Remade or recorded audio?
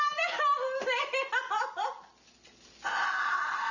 recorded